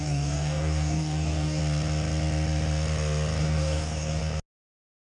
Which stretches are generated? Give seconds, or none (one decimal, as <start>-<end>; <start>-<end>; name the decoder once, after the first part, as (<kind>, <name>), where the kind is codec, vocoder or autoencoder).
0.0-1.6 (codec, DAC); 3.4-4.2